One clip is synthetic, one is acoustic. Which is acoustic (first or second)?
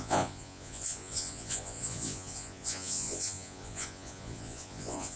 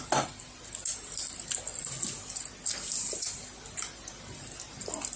second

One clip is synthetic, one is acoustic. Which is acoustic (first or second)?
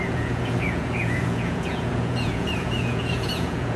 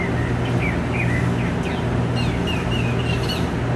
second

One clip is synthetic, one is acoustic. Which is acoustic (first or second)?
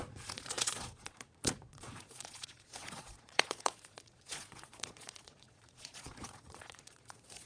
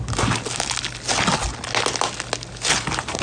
second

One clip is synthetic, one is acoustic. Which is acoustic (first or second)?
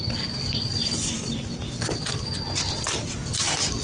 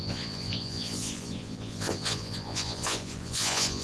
first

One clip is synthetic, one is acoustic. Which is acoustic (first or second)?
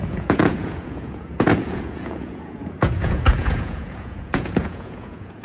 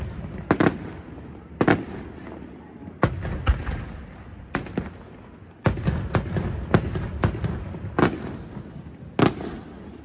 second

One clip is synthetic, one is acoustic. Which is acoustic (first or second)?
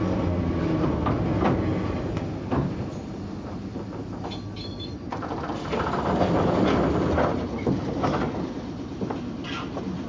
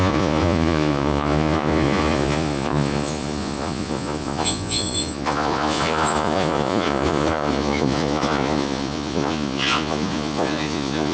first